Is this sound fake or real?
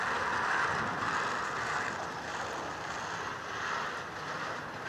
real